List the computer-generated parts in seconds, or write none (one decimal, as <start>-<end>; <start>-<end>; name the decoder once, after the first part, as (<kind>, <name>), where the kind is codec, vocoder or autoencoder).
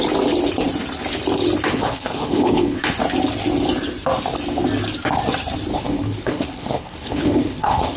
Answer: 1.7-2.8 (codec, HILCodec); 5.7-8.0